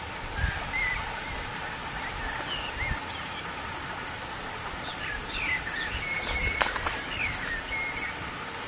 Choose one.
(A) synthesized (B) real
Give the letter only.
B